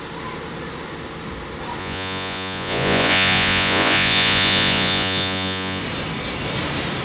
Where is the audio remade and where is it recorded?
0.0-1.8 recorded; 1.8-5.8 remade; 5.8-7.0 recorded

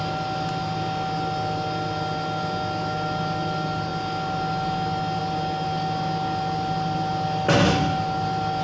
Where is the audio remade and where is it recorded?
0.0-8.6 recorded

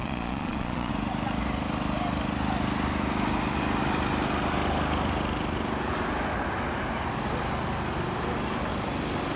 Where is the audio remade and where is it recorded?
0.0-0.9 remade; 0.9-9.4 recorded

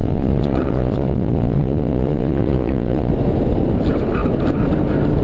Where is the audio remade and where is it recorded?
0.0-3.1 remade; 3.1-5.2 recorded

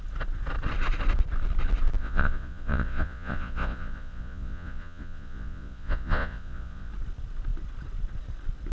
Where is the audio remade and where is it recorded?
0.0-2.0 recorded; 2.0-6.9 remade; 6.9-8.7 recorded